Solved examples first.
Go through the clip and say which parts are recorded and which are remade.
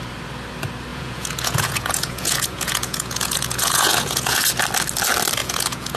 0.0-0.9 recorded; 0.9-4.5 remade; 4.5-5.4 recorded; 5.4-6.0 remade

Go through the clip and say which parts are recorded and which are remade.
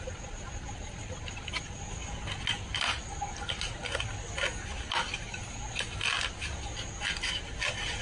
0.0-8.0 recorded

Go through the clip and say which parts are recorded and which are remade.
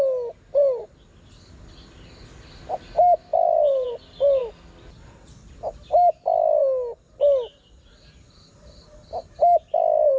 0.0-3.3 recorded; 3.3-3.9 remade; 3.9-10.2 recorded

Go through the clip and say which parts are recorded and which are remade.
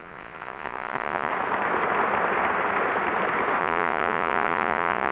0.0-1.3 remade; 1.3-3.6 recorded; 3.6-5.1 remade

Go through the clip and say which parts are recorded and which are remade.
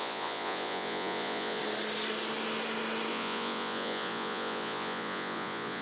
0.0-1.6 remade; 1.6-3.1 recorded; 3.1-5.8 remade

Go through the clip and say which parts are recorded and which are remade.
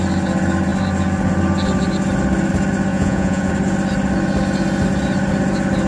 0.0-2.9 recorded; 2.9-3.5 remade; 3.5-5.9 recorded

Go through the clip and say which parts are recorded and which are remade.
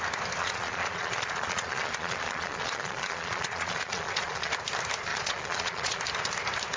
0.0-0.4 recorded; 0.4-4.5 remade; 4.5-5.1 recorded; 5.1-6.0 remade; 6.0-6.8 recorded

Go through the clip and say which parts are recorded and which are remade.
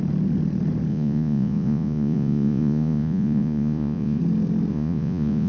0.0-0.9 recorded; 0.9-4.2 remade; 4.2-4.7 recorded; 4.7-5.5 remade